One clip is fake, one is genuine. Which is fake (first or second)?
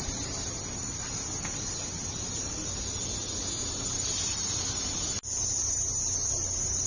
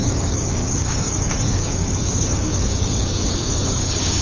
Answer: second